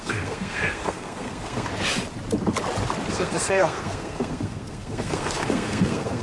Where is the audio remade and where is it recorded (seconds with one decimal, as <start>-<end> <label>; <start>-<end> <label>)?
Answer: 0.0-1.7 remade; 1.7-3.1 recorded; 3.1-6.2 remade